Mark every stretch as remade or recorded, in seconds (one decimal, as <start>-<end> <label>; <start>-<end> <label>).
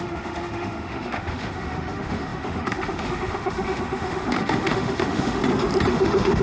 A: 0.0-5.4 remade; 5.4-5.9 recorded; 5.9-6.4 remade